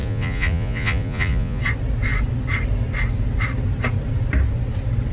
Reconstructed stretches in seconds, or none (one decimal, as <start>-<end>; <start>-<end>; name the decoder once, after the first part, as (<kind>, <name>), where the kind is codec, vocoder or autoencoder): 0.0-1.6 (vocoder, Vocos)